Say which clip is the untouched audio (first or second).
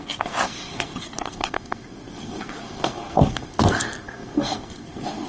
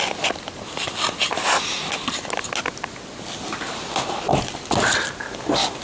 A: second